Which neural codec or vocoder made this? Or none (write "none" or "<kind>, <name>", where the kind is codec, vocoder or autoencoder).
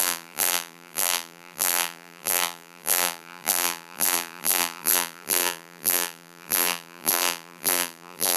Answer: vocoder, BigVGAN v2